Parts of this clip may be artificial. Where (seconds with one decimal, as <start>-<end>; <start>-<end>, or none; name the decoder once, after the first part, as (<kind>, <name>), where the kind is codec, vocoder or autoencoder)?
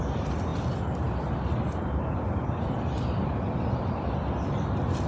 none